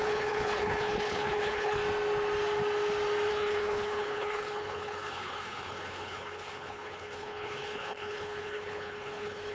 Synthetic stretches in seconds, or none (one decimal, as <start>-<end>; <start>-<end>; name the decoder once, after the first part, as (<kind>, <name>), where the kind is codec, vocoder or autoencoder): 0.0-1.8 (codec, HILCodec); 3.3-9.5